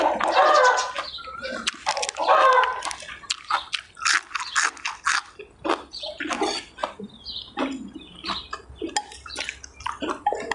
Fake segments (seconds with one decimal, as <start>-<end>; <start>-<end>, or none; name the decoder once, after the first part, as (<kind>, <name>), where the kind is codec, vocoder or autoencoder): none